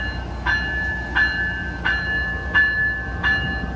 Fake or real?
real